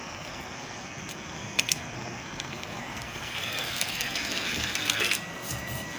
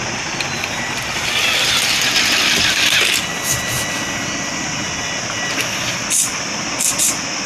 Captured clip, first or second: second